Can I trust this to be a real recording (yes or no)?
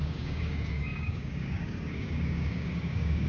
no